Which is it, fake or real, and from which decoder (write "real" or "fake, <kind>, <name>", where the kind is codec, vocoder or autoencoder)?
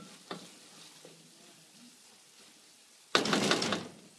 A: real